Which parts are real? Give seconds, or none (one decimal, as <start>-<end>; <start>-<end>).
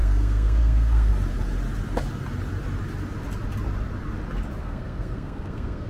1.1-4.6